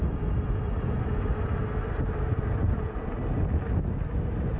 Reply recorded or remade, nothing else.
recorded